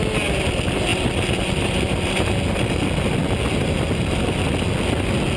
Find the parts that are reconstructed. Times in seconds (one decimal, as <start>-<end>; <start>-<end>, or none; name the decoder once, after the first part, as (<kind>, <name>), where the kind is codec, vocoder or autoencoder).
none